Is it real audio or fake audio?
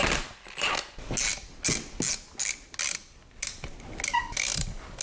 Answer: real